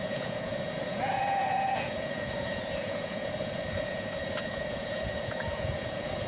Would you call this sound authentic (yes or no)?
no